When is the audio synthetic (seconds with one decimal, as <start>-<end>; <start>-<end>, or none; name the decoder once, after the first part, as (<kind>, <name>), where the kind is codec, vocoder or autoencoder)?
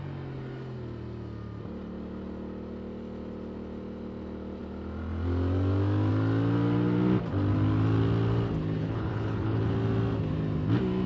8.8-9.7 (codec, HILCodec)